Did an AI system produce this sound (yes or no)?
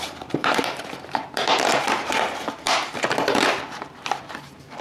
yes